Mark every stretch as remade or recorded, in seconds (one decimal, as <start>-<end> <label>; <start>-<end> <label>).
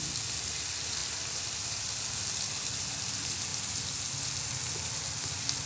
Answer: 0.0-5.7 recorded